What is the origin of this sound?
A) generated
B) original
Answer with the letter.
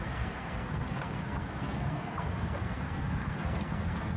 A